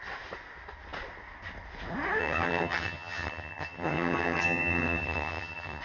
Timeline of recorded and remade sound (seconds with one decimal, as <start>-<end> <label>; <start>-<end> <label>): 0.0-2.2 recorded; 2.2-5.8 remade